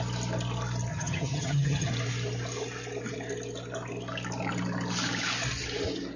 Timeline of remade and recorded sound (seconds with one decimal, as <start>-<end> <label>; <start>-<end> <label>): 0.0-0.9 recorded; 0.9-1.9 remade; 1.9-6.2 recorded